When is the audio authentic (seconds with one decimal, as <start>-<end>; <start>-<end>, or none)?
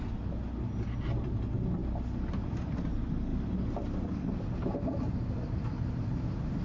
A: 0.0-6.6